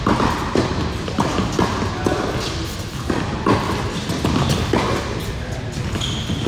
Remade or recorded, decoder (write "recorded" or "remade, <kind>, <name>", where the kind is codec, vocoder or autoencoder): recorded